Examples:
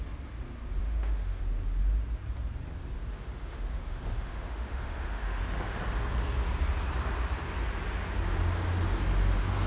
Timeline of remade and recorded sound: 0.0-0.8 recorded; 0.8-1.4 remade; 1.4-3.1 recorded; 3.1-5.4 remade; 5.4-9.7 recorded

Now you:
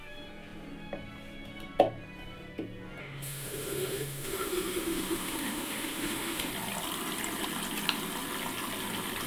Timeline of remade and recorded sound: 0.0-3.0 recorded; 3.0-6.5 remade; 6.5-9.3 recorded

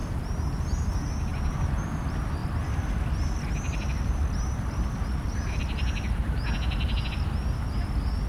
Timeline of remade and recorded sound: 0.0-8.3 recorded

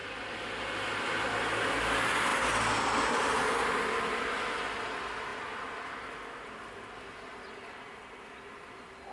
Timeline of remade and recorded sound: 0.0-9.1 recorded

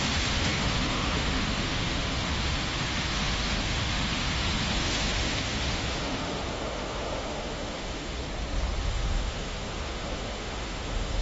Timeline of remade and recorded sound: 0.0-8.2 remade; 8.2-8.8 recorded; 8.8-11.2 remade

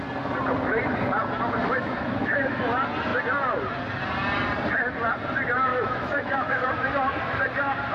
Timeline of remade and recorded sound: 0.0-1.6 recorded; 1.6-2.6 remade; 2.6-5.7 recorded; 5.7-6.7 remade; 6.7-7.9 recorded

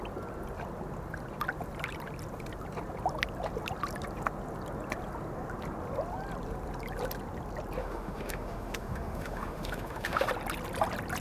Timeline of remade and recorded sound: 0.0-7.8 recorded; 7.8-10.3 remade; 10.3-11.2 recorded

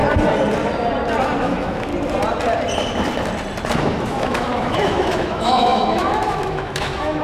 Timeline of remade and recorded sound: 0.0-1.4 recorded; 1.4-1.9 remade; 1.9-3.8 recorded; 3.8-7.2 remade